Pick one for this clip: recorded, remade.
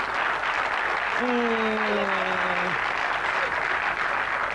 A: recorded